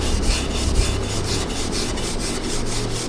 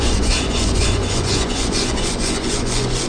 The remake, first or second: second